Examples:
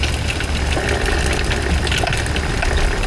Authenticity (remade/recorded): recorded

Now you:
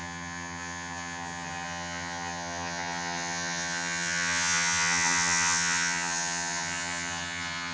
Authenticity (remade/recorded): remade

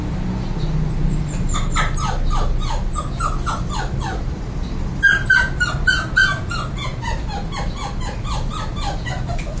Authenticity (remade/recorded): recorded